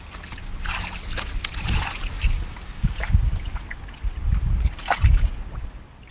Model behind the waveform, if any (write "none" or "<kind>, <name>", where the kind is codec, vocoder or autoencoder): none